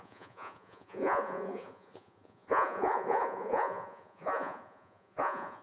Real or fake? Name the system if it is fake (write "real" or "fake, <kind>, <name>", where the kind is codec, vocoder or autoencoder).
fake, vocoder, Vocos